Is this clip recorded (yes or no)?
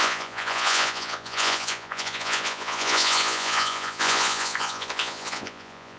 no